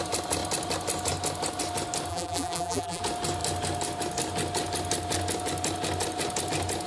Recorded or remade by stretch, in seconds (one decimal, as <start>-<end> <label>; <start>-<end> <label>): 0.0-2.1 recorded; 2.1-3.0 remade; 3.0-6.9 recorded